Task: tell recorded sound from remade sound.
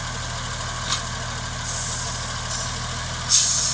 recorded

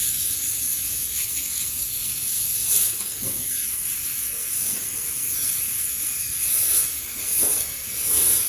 remade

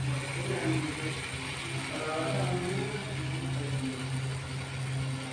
recorded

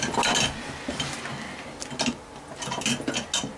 recorded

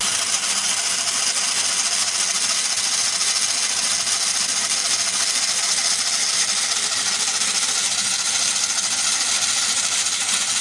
recorded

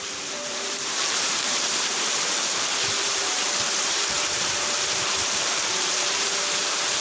remade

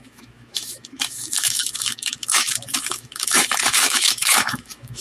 remade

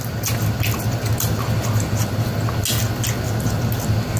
recorded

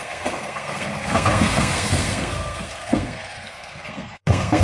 remade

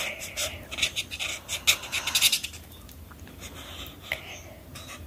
recorded